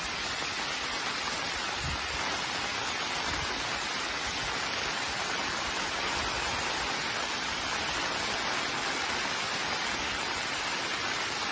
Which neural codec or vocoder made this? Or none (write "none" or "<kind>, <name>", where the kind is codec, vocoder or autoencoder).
none